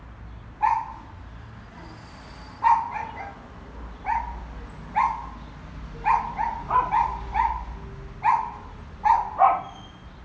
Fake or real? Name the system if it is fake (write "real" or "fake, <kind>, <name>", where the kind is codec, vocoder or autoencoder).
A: real